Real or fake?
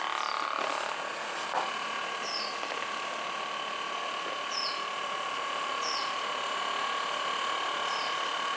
real